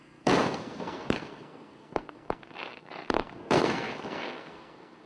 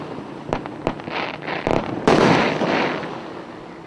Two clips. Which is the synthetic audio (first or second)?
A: first